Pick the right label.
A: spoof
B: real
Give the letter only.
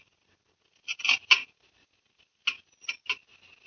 B